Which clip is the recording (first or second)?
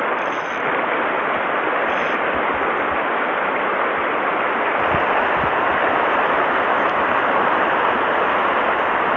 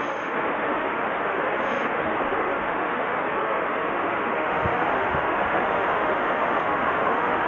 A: first